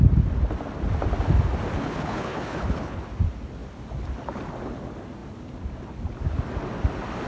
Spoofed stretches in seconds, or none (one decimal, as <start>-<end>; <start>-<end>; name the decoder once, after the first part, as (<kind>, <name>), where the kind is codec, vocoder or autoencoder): 1.8-3.0 (codec, HILCodec)